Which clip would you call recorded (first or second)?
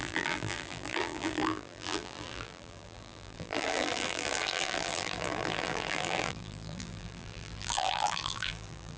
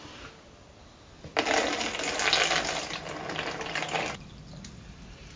second